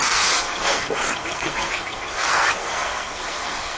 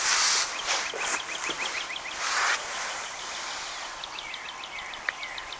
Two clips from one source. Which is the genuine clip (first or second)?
second